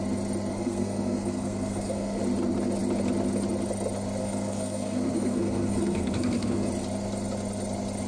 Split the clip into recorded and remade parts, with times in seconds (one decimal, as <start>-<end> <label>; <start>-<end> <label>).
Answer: 0.0-0.5 recorded; 0.5-2.2 remade; 2.2-4.2 recorded; 4.2-6.7 remade; 6.7-8.1 recorded